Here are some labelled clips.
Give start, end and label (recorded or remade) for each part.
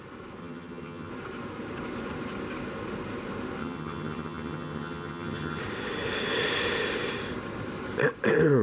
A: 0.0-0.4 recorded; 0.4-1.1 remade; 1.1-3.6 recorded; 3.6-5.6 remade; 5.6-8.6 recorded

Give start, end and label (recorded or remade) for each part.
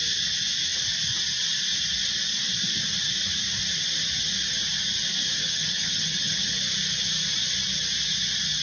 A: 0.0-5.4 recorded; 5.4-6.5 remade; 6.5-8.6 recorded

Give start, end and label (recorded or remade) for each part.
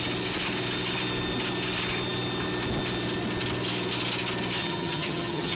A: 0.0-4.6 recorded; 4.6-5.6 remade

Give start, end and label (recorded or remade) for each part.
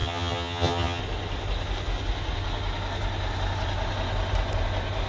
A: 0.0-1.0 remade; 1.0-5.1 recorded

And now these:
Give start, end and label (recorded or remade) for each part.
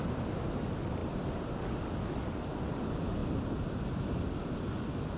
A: 0.0-5.2 recorded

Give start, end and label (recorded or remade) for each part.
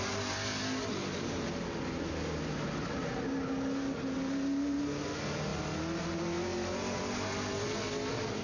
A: 0.0-8.4 recorded